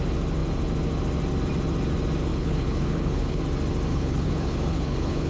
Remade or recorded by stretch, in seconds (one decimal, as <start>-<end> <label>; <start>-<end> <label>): 0.0-2.3 recorded; 2.3-3.4 remade; 3.4-3.9 recorded; 3.9-5.3 remade